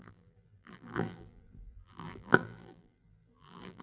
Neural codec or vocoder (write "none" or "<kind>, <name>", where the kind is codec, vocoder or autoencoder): vocoder, BigVGAN v2